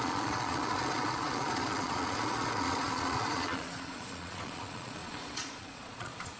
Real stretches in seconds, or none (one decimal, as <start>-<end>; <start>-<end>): none